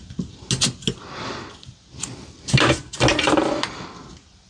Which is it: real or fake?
real